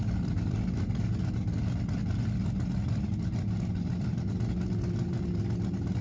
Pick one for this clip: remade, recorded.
recorded